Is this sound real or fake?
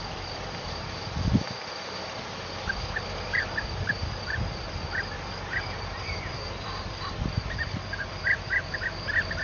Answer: fake